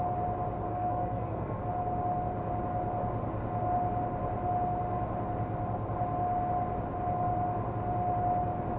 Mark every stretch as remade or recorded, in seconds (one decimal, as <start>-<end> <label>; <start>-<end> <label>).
0.0-0.7 recorded; 0.7-1.6 remade; 1.6-8.8 recorded